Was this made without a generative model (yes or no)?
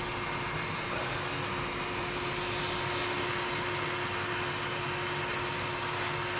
yes